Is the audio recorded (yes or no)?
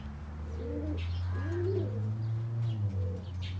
yes